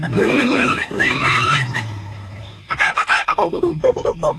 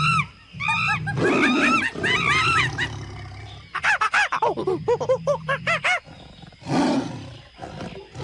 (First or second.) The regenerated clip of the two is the first